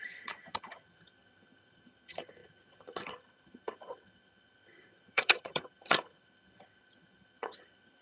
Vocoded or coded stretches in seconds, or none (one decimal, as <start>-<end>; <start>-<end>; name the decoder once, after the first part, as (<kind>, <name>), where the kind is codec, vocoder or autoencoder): 0.0-8.0 (vocoder, HiFi-GAN)